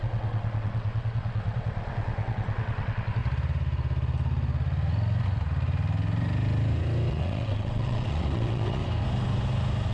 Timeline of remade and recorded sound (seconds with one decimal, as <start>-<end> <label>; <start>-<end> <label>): 0.0-3.2 remade; 3.2-7.1 recorded; 7.1-8.8 remade; 8.8-9.9 recorded

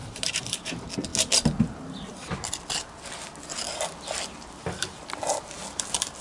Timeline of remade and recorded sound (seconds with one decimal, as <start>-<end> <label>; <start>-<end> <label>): 0.0-0.7 remade; 0.7-6.2 recorded